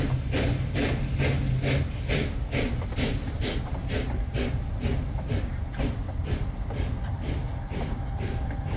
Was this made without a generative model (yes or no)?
yes